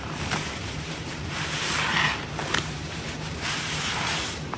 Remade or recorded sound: remade